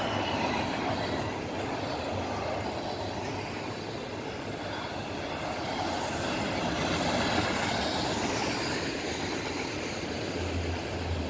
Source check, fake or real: real